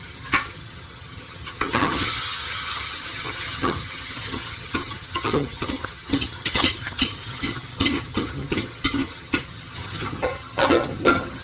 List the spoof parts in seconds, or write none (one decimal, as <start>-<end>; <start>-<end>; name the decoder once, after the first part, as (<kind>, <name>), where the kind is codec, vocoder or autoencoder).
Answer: 0.0-11.4 (vocoder, HiFi-GAN)